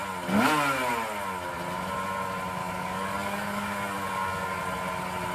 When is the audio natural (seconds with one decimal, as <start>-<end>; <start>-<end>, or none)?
0.0-2.6; 4.6-5.3